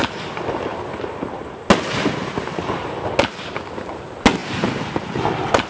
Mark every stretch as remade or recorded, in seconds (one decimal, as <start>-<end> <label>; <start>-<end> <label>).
0.0-5.7 recorded